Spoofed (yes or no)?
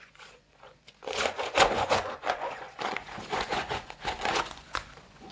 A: yes